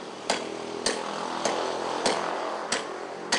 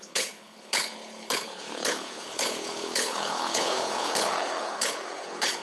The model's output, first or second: second